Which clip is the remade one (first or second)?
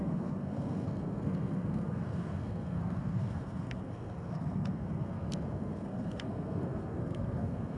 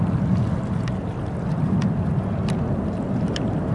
first